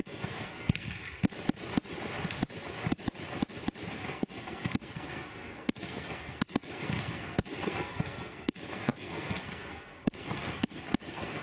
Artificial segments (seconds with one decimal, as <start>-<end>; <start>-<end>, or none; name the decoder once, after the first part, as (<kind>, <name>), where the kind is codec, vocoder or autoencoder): 0.0-1.2 (codec, SNAC); 3.9-11.4